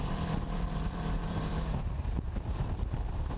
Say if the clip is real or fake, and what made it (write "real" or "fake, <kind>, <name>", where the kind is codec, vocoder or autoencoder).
fake, vocoder, BigVGAN v2